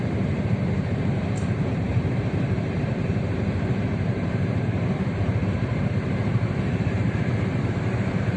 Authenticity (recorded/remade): remade